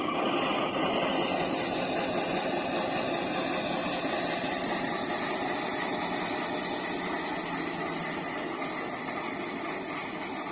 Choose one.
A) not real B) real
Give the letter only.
B